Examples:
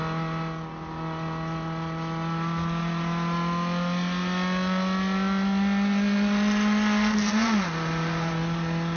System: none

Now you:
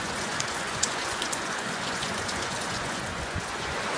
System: vocoder, Vocos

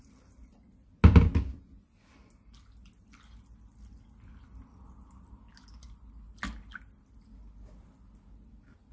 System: none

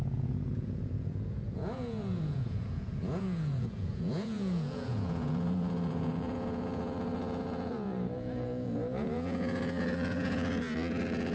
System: vocoder, Vocos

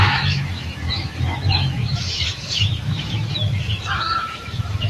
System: autoencoder, DAC-VAE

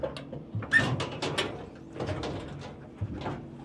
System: none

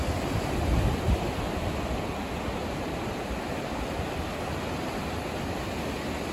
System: none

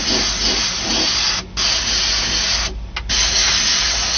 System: none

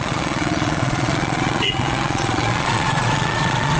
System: vocoder, Vocos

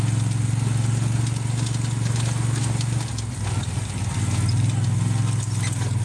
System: none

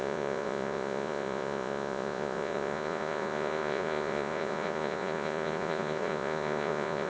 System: vocoder, Vocos